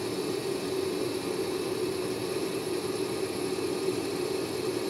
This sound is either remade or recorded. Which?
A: recorded